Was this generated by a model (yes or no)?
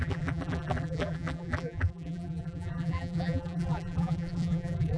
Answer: yes